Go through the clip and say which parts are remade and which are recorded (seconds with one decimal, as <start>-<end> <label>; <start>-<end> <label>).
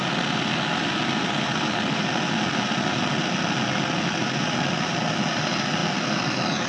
0.0-6.7 recorded